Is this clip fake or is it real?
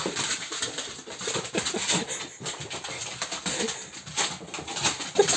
real